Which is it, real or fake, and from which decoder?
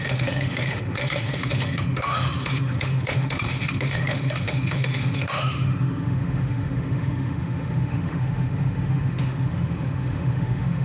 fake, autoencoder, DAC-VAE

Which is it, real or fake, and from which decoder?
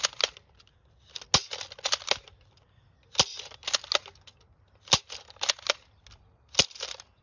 real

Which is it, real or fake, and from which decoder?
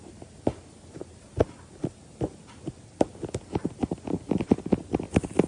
real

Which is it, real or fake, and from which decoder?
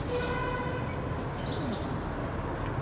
real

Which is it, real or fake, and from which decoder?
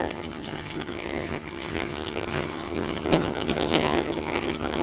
fake, vocoder, HiFi-GAN